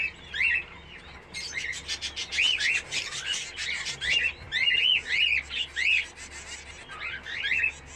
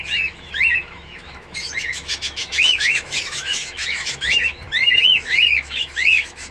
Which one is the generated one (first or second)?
second